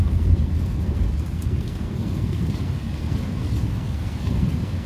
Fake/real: fake